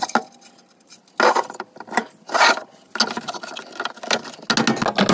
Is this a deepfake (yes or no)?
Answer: no